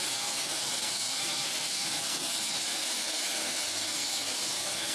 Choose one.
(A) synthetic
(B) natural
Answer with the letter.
A